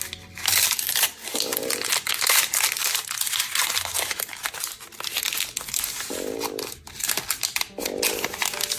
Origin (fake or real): real